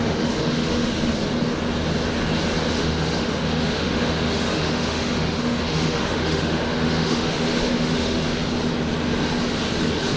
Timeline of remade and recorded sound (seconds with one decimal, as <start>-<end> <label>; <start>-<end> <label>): 0.0-1.1 remade; 1.1-2.7 recorded; 2.7-8.3 remade; 8.3-10.2 recorded